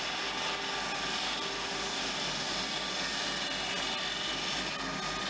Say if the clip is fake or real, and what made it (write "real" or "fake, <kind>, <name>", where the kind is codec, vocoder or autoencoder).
real